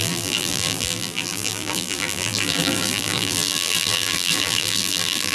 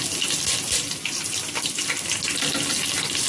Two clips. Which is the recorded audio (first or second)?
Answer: second